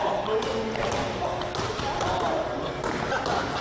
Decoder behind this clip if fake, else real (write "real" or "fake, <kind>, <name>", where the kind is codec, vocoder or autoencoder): real